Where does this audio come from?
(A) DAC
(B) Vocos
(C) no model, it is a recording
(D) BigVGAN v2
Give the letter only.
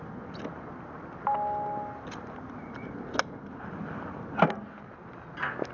C